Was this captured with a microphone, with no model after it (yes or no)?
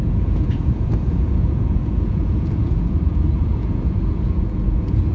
no